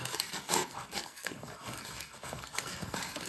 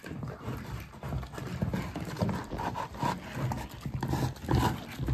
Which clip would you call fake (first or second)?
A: first